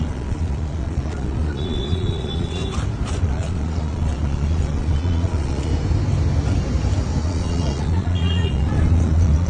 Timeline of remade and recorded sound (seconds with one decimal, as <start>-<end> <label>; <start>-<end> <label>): 0.0-2.6 remade; 2.6-3.2 recorded; 3.2-5.7 remade; 5.7-7.2 recorded; 7.2-9.5 remade